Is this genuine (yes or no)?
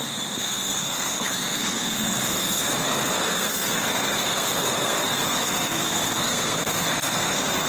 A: no